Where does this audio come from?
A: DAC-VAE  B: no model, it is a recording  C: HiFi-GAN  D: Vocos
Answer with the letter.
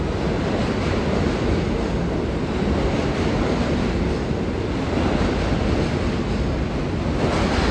B